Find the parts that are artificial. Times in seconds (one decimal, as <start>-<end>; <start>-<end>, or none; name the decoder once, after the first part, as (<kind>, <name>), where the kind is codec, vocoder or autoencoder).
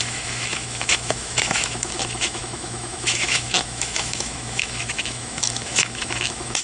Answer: 0.0-6.6 (autoencoder, DAC-VAE)